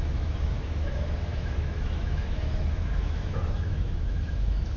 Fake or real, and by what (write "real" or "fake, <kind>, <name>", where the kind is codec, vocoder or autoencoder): fake, autoencoder, DAC-VAE